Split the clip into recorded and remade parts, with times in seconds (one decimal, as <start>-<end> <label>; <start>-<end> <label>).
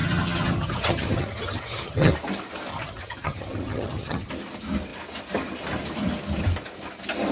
0.0-2.1 remade; 2.1-2.7 recorded; 2.7-4.3 remade; 4.3-7.3 recorded